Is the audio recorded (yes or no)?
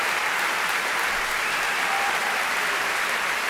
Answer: yes